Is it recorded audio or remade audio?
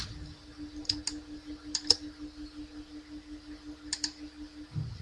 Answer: recorded